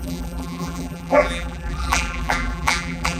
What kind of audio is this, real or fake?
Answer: fake